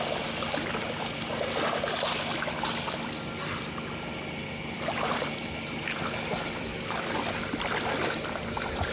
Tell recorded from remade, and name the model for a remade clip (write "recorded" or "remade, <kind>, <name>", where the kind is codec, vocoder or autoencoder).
recorded